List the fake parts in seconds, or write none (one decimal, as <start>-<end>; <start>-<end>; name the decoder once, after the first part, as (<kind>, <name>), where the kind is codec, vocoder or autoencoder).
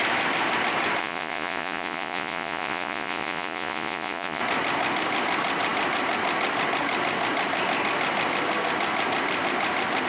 1.0-4.4 (vocoder, Vocos)